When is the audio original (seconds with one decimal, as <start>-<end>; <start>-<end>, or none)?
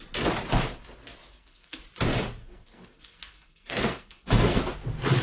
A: 0.0-1.3; 1.8-2.4; 4.6-5.2